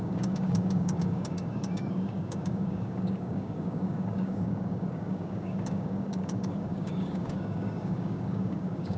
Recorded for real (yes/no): no